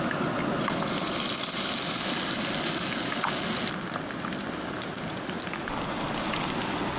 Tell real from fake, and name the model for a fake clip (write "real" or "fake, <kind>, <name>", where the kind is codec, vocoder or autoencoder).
real